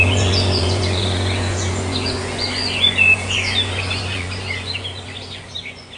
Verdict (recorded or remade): remade